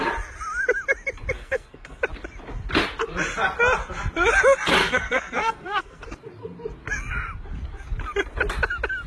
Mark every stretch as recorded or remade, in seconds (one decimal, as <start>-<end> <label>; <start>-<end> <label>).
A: 0.0-1.4 recorded; 1.4-2.0 remade; 2.0-4.8 recorded; 4.8-6.0 remade; 6.0-9.1 recorded